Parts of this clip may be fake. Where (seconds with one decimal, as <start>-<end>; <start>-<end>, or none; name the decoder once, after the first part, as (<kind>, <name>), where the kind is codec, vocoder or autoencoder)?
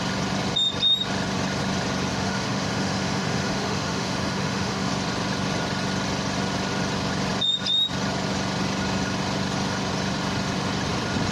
2.1-4.9 (autoencoder, DAC-VAE)